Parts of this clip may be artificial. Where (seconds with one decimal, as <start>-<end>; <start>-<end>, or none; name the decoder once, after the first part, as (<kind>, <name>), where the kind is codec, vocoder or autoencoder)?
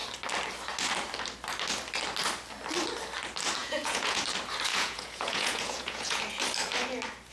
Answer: 3.6-4.2 (vocoder, Vocos); 4.7-6.2